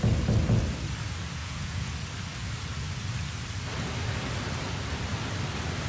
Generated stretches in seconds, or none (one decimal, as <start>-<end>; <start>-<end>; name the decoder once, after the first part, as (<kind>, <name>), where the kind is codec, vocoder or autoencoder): 1.4-1.9 (vocoder, Vocos)